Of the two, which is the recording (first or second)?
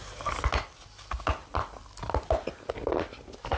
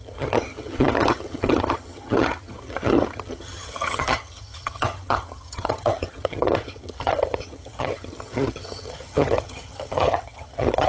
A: first